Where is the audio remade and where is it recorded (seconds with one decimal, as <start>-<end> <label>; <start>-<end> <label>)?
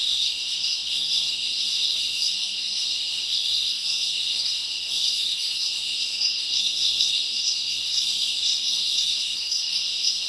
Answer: 0.0-10.3 remade